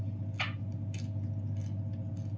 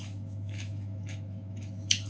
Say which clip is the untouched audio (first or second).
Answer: first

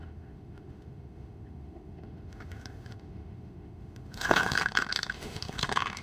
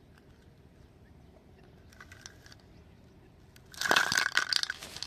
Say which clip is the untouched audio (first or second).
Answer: second